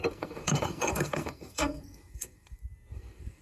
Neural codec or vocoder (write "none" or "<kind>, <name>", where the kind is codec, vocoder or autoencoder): codec, SNAC